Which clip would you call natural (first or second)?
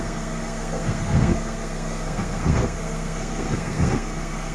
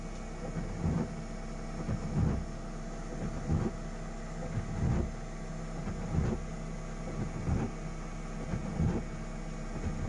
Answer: second